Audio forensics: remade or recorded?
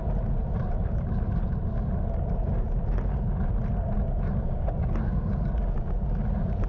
recorded